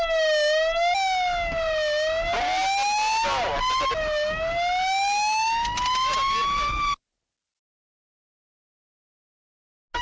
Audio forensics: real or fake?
real